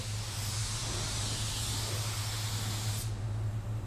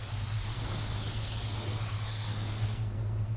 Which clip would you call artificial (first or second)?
second